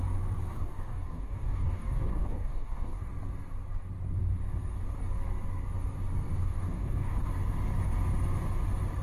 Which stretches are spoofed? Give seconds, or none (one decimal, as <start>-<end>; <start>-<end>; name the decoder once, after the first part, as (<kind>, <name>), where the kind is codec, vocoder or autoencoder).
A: 0.5-3.0 (codec, DAC); 6.4-7.3